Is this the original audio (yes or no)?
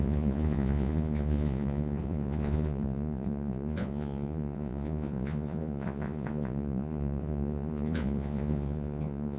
no